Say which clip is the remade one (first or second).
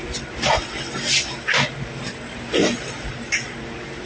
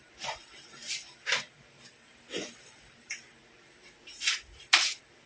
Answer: second